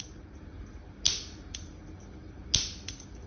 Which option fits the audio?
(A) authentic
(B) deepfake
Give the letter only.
A